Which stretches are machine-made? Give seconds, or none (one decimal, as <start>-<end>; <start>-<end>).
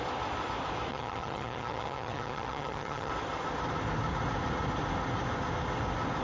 0.9-3.1